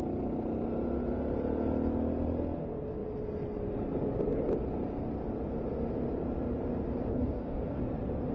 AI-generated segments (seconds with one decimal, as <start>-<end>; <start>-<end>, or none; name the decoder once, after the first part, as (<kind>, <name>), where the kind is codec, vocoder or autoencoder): 7.1-7.8 (codec, DAC)